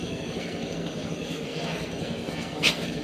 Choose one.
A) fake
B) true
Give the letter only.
A